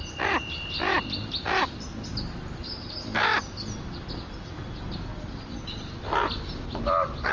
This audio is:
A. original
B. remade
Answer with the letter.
A